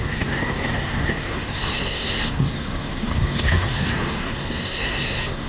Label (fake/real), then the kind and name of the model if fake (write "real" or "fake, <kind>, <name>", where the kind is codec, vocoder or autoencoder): fake, codec, SNAC